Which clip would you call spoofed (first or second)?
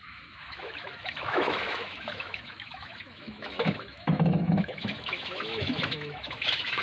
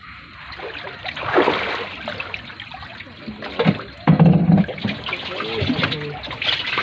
first